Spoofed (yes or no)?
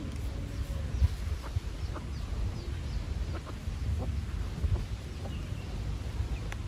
no